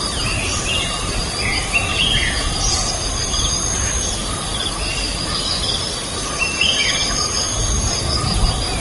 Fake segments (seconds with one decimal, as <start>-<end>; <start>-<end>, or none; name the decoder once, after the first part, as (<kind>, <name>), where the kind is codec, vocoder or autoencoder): 1.9-3.1 (vocoder, Vocos)